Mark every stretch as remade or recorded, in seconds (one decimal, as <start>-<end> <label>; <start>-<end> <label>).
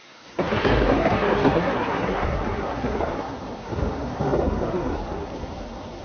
0.0-6.0 remade